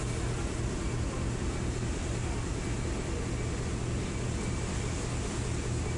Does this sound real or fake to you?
real